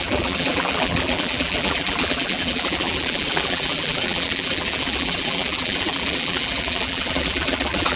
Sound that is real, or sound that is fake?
fake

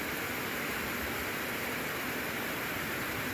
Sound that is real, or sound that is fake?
real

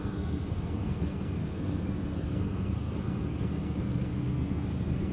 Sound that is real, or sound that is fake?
fake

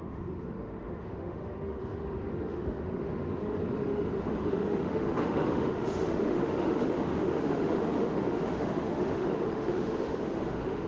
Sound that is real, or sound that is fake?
fake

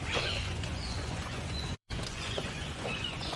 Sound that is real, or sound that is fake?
fake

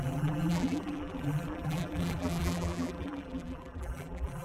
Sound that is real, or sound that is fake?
fake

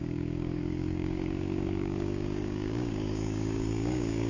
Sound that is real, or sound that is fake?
fake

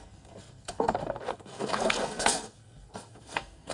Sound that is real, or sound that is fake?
fake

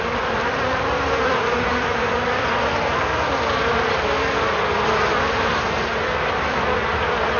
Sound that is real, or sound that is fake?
real